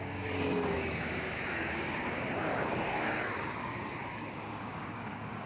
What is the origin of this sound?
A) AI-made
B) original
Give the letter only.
A